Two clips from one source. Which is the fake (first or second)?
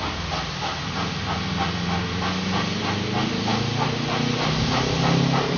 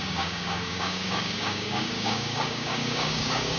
second